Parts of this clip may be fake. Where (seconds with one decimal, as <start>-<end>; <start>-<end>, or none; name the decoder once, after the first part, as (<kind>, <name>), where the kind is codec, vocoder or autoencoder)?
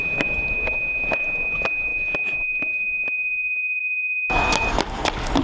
none